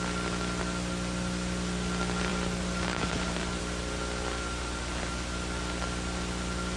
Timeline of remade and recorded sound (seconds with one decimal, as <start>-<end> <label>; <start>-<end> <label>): 0.0-2.3 recorded; 2.3-3.6 remade; 3.6-6.8 recorded